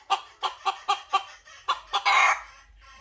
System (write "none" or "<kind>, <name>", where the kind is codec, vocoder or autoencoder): vocoder, BigVGAN v2